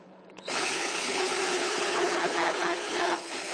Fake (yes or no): yes